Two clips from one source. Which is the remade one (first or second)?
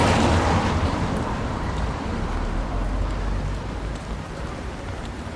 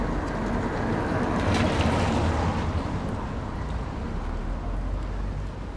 first